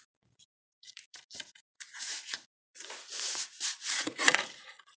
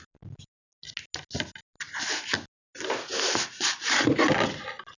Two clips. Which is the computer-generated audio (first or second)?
first